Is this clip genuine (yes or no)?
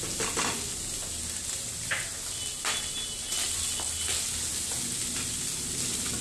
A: yes